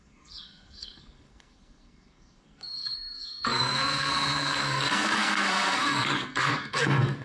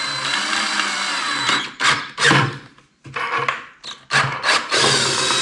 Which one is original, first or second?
second